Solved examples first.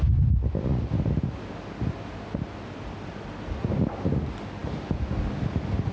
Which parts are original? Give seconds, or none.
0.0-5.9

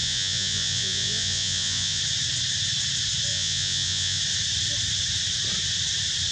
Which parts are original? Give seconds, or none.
2.0-3.3; 4.2-6.3

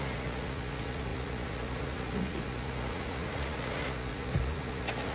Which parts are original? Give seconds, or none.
none